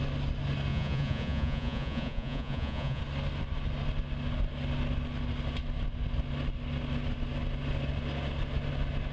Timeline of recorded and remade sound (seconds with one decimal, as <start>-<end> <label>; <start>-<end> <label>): 0.0-0.7 recorded; 0.7-3.0 remade; 3.0-9.1 recorded